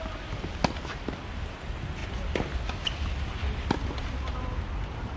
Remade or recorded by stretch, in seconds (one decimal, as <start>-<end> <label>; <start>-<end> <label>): 0.0-5.2 recorded